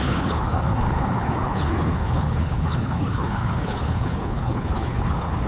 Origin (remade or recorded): remade